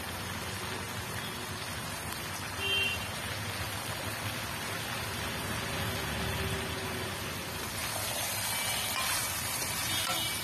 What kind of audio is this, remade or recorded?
recorded